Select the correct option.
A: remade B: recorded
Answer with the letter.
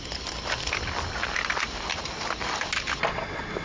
B